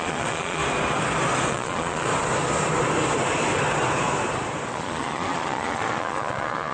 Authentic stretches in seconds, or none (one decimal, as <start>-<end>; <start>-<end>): 0.6-1.5; 2.1-4.7